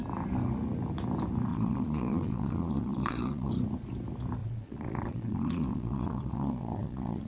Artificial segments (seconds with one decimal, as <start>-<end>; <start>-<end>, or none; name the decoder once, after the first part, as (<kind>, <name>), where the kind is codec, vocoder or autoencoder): 1.5-3.5 (vocoder, Vocos); 4.4-7.3